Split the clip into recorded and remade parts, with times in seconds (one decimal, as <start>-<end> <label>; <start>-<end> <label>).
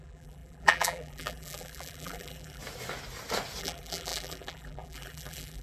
0.0-2.6 remade; 2.6-3.6 recorded; 3.6-5.6 remade